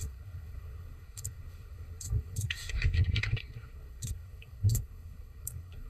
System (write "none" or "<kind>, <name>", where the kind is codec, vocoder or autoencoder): codec, SNAC